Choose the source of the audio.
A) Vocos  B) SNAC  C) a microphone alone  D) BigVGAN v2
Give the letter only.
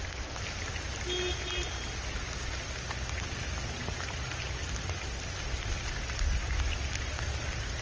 C